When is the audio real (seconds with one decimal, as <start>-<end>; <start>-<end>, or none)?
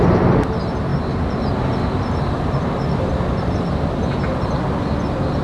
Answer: 0.0-5.4